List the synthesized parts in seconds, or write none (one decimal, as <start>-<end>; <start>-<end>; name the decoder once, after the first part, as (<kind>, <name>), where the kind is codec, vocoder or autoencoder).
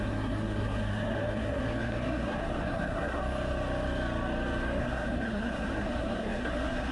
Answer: 0.0-3.2 (codec, SNAC); 4.8-6.9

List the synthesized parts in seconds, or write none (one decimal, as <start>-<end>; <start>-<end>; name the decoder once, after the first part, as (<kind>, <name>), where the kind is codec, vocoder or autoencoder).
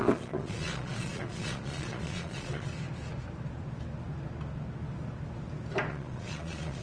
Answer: 0.0-2.7 (vocoder, Vocos); 5.9-6.8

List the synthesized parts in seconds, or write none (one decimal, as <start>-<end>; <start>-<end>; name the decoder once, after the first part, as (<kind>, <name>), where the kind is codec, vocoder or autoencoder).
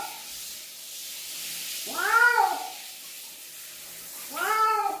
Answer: 1.0-3.7 (vocoder, BigVGAN v2)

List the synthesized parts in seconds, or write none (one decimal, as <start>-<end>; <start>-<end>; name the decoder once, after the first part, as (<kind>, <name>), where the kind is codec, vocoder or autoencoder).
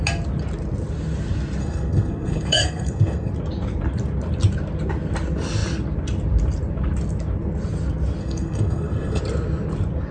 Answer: 1.6-3.3 (codec, SNAC); 8.2-9.2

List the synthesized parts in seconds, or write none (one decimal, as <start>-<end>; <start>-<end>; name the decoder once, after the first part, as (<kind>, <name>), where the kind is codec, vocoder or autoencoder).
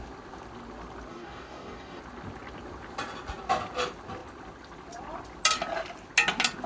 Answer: 1.1-2.0 (codec, DAC)